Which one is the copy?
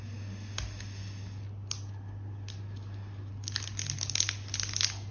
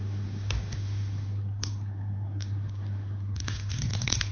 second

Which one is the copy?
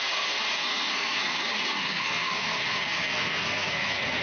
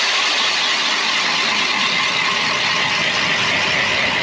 first